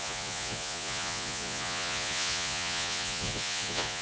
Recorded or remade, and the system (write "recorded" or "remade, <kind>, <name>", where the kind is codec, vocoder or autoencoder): remade, vocoder, Vocos